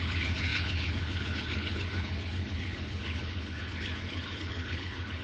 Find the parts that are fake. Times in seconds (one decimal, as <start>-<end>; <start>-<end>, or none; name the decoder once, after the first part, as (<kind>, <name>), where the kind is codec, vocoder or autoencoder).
0.0-5.2 (codec, HILCodec)